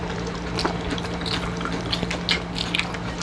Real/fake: real